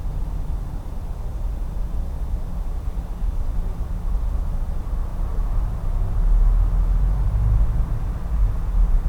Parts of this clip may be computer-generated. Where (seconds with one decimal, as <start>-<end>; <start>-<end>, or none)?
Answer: 5.1-5.7